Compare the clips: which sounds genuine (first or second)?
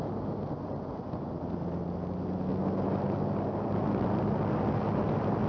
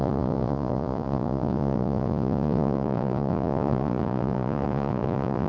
first